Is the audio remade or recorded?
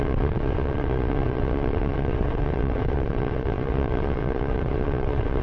remade